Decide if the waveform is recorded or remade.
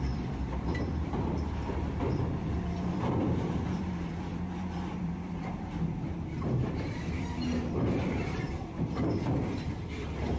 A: remade